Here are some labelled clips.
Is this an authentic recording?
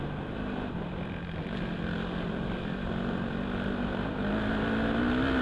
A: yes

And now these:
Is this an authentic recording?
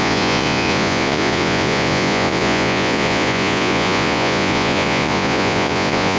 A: no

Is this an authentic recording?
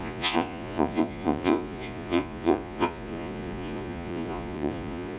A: no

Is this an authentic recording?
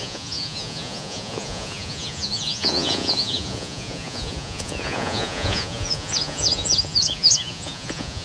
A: no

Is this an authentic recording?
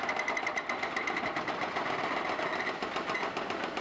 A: yes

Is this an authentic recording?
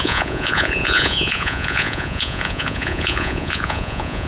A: no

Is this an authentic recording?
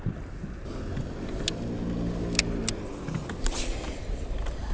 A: yes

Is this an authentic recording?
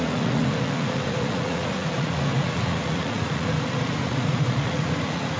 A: no